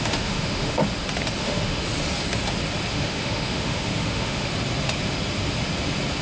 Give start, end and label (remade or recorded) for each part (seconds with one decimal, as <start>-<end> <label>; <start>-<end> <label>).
0.0-0.8 remade; 0.8-1.4 recorded; 1.4-1.8 remade; 1.8-2.9 recorded; 2.9-4.5 remade; 4.5-6.2 recorded